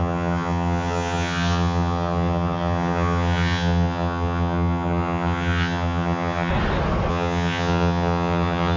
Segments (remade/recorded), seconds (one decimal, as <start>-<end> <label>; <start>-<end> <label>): 0.0-6.5 remade; 6.5-7.1 recorded; 7.1-8.8 remade